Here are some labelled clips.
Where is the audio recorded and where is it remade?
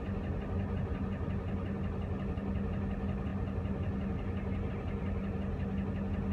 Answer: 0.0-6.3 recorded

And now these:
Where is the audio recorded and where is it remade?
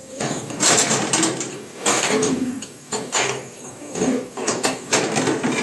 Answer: 0.0-0.6 remade; 0.6-1.5 recorded; 1.5-4.9 remade; 4.9-5.6 recorded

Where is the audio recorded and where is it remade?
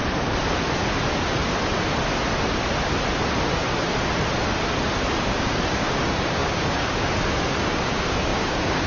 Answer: 0.0-5.1 recorded; 5.1-8.9 remade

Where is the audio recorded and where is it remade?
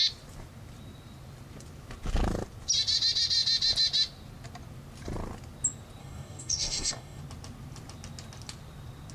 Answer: 0.0-6.0 recorded; 6.0-7.2 remade; 7.2-9.1 recorded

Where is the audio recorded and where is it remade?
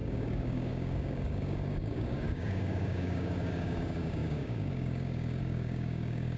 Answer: 0.0-6.4 remade